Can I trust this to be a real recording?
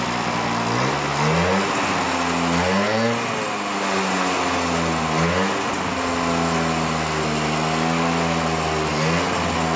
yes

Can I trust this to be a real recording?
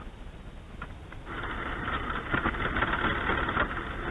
yes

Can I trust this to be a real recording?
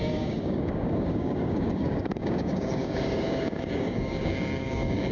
no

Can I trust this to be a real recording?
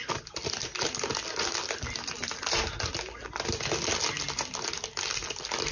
yes